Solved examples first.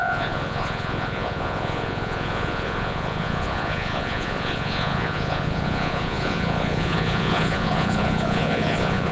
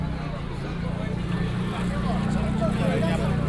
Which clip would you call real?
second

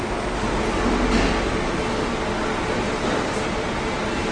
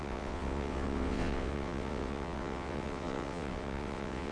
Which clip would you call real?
first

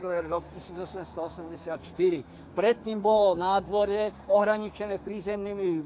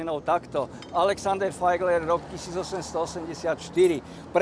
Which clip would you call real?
second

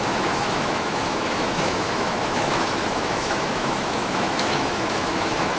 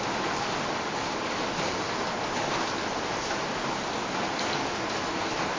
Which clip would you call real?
second